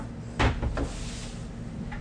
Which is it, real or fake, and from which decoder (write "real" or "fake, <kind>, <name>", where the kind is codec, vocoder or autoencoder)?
real